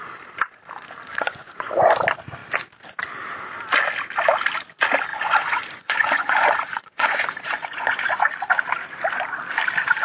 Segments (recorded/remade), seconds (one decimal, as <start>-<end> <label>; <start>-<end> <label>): 0.0-1.1 recorded; 1.1-1.7 remade; 1.7-5.1 recorded; 5.1-8.5 remade; 8.5-10.0 recorded